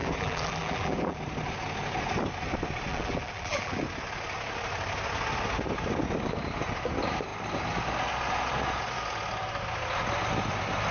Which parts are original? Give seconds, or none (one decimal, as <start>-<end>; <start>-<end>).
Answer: 1.2-2.9; 3.8-10.9